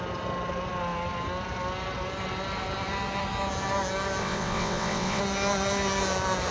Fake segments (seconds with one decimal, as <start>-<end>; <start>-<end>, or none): 4.2-5.2